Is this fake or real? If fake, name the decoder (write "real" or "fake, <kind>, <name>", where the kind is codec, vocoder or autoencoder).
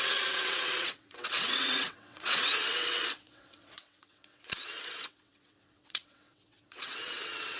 fake, vocoder, WaveNeXt